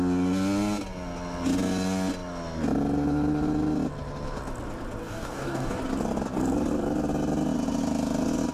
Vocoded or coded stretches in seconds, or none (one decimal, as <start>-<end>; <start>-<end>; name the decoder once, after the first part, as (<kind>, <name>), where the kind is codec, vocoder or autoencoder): 5.0-5.8 (codec, DAC)